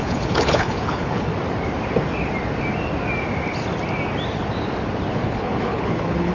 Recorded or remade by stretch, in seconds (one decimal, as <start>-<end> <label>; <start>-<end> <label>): 0.0-1.3 remade; 1.3-5.1 recorded; 5.1-6.3 remade